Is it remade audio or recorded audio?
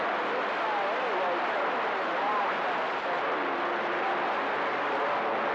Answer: recorded